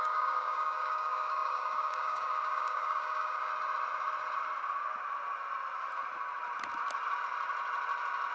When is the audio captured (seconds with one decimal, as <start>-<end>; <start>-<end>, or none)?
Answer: 3.5-8.3